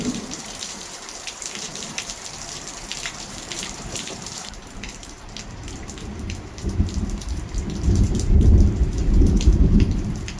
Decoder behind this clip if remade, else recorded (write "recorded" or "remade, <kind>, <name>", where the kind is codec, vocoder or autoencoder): remade, vocoder, BigVGAN v2